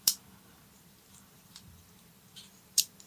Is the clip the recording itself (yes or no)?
no